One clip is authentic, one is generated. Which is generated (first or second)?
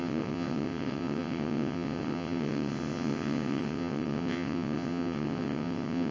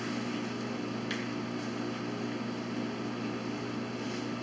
first